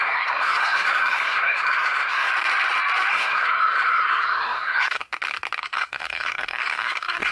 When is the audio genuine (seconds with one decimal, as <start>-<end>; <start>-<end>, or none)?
2.3-3.1; 5.0-5.6